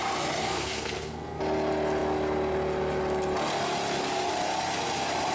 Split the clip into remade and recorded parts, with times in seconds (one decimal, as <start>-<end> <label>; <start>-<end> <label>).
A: 0.0-0.4 recorded; 0.4-1.4 remade; 1.4-5.3 recorded